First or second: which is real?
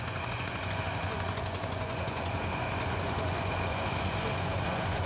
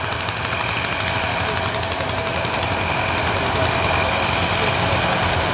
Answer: second